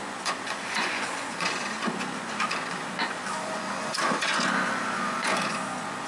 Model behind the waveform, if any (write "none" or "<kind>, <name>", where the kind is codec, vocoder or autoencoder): vocoder, Vocos